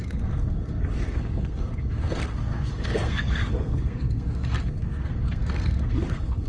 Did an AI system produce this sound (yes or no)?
yes